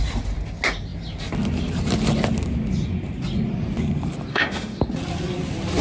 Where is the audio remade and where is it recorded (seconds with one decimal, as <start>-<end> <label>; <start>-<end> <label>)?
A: 0.0-4.3 recorded; 4.3-4.8 remade; 4.8-5.8 recorded